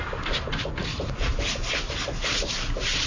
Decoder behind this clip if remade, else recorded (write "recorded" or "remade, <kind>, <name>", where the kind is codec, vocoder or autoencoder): recorded